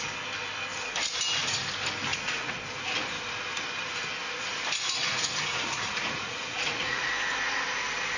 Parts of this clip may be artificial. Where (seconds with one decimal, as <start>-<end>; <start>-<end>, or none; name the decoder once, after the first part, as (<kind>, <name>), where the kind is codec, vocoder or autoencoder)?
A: 2.1-2.6 (vocoder, Vocos); 5.4-7.1